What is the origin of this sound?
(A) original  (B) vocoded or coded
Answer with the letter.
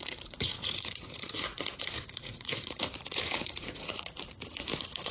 B